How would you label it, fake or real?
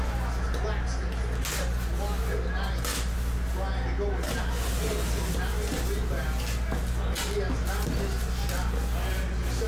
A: real